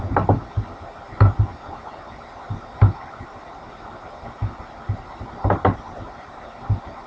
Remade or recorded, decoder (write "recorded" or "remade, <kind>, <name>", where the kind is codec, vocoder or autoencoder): recorded